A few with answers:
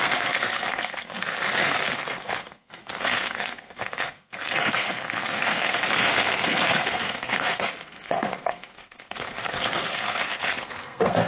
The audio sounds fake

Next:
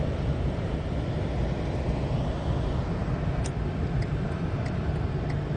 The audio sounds real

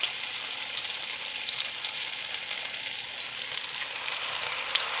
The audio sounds real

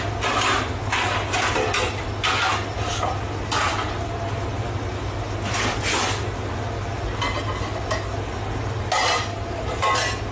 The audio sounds real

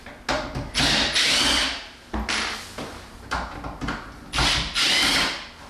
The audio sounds real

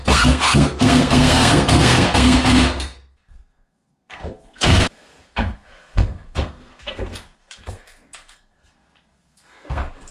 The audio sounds fake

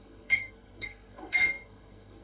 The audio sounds fake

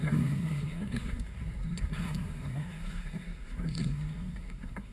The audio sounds fake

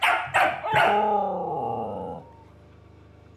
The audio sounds real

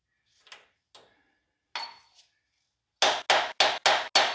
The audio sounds real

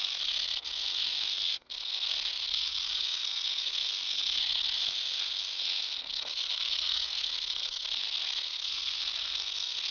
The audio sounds fake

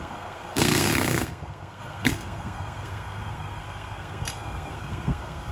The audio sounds fake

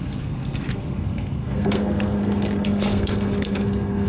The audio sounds fake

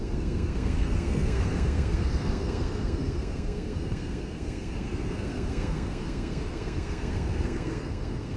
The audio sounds fake